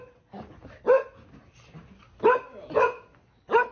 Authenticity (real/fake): real